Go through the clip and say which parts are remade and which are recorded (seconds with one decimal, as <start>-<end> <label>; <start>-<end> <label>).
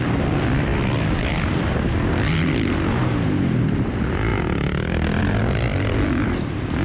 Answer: 0.0-6.8 recorded